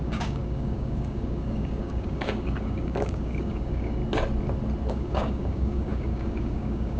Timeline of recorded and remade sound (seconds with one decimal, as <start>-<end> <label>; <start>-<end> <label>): 0.0-4.0 remade; 4.0-4.9 recorded; 4.9-7.0 remade